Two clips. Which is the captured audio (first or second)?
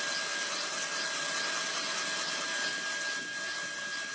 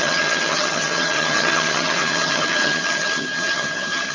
first